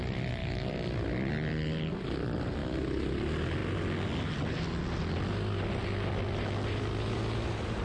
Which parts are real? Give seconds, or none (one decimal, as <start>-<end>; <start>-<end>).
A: 0.0-0.4; 1.3-7.8

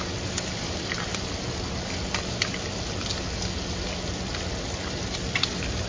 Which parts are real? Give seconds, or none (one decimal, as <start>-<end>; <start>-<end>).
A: 1.1-4.6

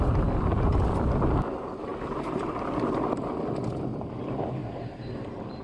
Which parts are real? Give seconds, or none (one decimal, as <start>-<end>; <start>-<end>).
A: 0.0-1.9; 2.5-4.6